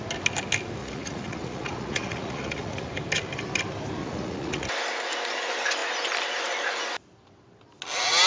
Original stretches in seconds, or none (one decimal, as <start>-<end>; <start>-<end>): 0.0-0.8; 2.9-4.0; 4.7-8.3